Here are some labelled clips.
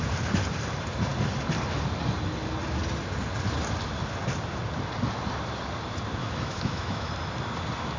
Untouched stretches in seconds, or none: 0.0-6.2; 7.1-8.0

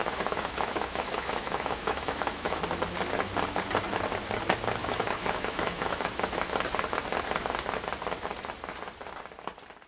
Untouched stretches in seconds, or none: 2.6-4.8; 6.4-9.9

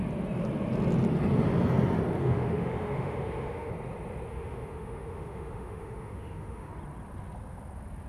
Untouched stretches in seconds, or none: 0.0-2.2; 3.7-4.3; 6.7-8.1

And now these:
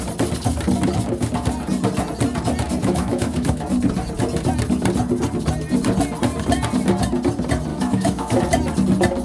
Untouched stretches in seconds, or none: 0.0-2.8; 3.6-7.7; 8.4-9.2